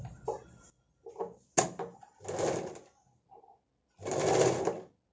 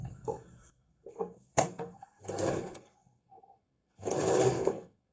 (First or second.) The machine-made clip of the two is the second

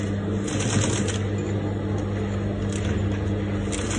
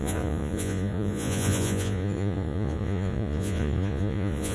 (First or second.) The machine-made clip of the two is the second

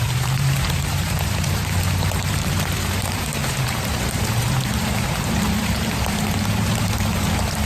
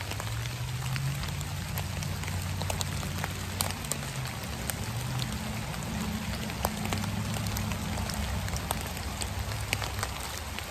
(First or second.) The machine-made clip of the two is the first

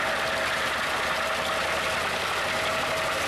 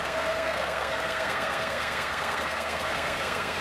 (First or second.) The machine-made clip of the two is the second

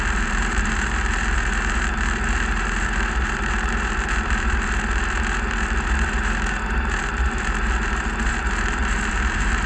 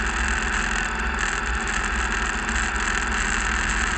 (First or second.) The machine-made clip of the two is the first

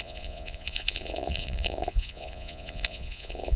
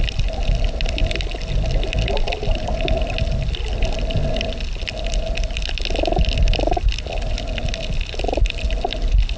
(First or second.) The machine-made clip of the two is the first